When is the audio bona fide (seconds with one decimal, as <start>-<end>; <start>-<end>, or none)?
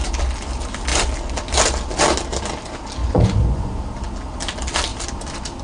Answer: 0.0-3.0; 3.8-5.6